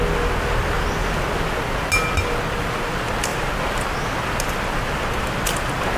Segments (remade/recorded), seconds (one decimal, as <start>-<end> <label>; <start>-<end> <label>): 0.0-6.0 recorded